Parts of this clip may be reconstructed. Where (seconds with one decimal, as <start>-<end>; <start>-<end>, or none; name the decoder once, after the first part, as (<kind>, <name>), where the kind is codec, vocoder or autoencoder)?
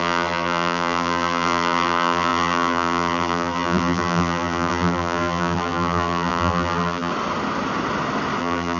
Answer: 0.0-7.1 (vocoder, BigVGAN v2); 8.4-8.8